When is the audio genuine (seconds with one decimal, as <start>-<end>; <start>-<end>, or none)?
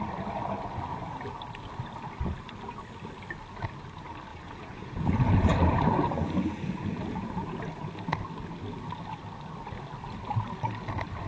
0.0-4.3; 7.9-11.3